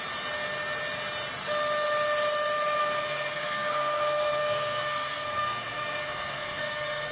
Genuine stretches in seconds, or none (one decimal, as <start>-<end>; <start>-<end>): 0.0-2.8